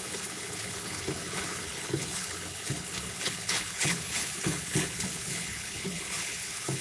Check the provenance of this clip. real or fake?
fake